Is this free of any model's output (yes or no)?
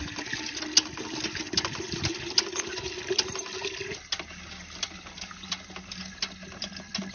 yes